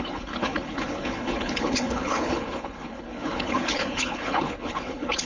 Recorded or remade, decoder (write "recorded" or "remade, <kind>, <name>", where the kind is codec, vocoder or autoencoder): remade, codec, HILCodec